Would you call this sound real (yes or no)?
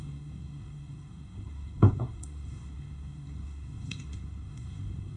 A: no